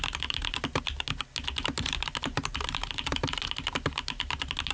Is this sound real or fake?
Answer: real